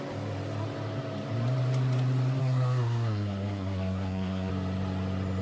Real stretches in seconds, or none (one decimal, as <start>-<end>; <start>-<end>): 0.0-2.4; 4.5-5.4